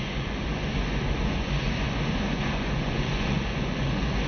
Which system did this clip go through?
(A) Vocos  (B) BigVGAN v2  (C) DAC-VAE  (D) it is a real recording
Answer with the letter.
A